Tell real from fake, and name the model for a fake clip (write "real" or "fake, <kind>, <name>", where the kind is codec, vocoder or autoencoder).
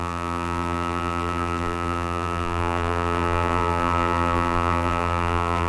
fake, vocoder, BigVGAN v2